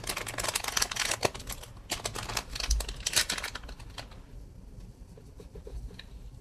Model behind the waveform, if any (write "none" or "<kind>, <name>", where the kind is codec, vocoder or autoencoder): none